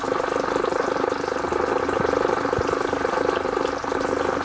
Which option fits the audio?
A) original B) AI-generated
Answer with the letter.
A